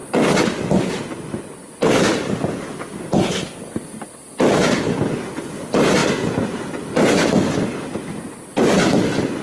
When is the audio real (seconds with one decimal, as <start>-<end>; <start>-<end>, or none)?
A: 0.0-9.4